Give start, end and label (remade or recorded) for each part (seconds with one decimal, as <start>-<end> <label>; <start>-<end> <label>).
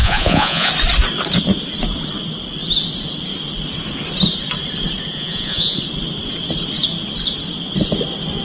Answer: 0.0-0.7 remade; 0.7-5.1 recorded; 5.1-5.8 remade; 5.8-8.4 recorded